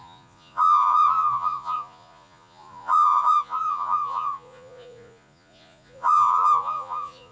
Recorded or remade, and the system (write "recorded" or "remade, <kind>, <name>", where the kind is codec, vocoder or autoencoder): remade, vocoder, Vocos